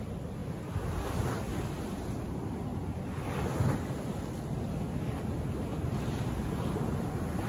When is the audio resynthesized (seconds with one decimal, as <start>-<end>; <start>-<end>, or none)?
none